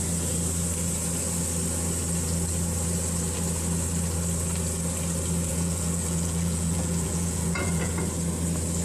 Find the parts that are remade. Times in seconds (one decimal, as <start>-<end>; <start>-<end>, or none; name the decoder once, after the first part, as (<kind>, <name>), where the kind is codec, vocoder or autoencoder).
5.5-7.9 (vocoder, Vocos)